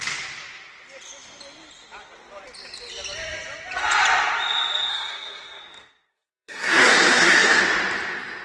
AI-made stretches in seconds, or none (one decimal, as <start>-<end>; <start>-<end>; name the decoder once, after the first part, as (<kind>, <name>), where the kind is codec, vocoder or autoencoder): 4.9-5.6 (codec, SNAC); 6.1-7.6